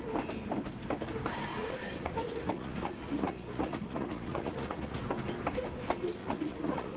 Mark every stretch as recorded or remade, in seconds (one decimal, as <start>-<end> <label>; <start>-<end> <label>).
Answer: 0.0-1.5 recorded; 1.5-5.0 remade; 5.0-6.2 recorded; 6.2-7.0 remade